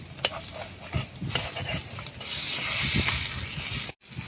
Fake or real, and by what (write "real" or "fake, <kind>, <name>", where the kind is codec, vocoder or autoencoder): real